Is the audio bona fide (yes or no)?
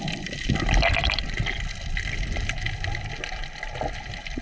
yes